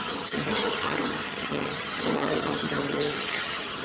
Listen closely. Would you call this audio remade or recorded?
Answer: remade